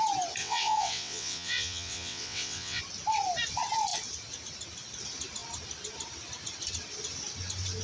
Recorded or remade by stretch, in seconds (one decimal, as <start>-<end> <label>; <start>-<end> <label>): 0.0-0.4 recorded; 0.4-2.8 remade; 2.8-7.8 recorded